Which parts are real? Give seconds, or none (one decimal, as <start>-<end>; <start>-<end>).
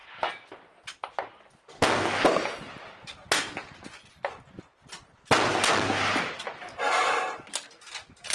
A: 0.0-8.3